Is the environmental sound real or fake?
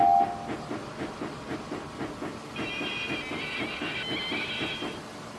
real